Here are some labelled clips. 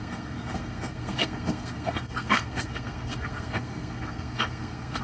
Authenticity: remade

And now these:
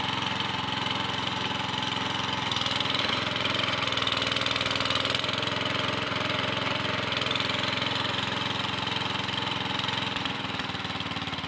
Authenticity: recorded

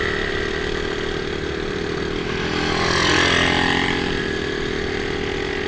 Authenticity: recorded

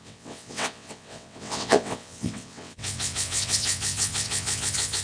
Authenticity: remade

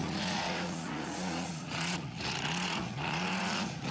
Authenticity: remade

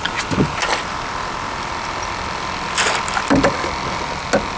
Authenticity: recorded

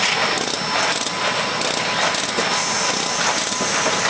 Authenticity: recorded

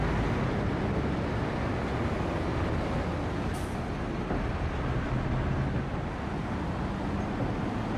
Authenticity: recorded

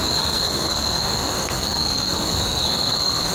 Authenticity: remade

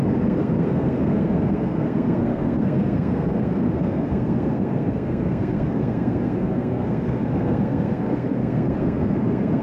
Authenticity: remade